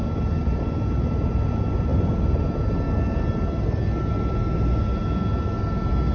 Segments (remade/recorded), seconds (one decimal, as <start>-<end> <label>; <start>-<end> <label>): 0.0-6.1 recorded